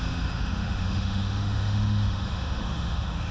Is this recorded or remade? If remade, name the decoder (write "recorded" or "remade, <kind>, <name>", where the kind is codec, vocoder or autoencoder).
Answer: remade, autoencoder, DAC-VAE